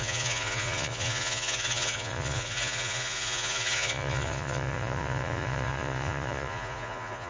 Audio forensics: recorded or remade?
remade